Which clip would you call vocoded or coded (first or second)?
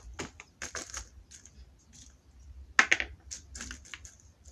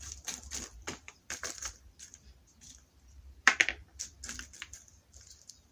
second